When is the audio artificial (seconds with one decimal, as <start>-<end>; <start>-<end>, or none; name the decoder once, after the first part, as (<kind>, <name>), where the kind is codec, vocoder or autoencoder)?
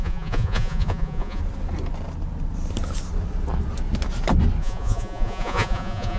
0.0-1.4 (vocoder, Vocos); 4.6-6.2